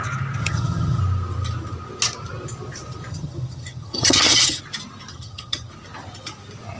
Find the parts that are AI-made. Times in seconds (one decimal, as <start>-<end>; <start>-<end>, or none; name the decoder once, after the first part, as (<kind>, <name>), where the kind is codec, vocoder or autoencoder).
0.4-1.0 (vocoder, HiFi-GAN); 3.1-4.6; 5.1-5.7